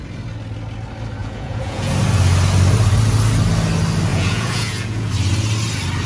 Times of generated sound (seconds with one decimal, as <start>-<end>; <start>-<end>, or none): 1.2-1.9; 4.1-5.1